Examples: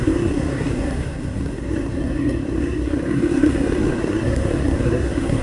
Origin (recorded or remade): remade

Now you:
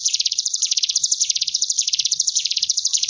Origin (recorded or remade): remade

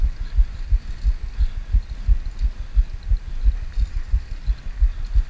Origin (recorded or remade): recorded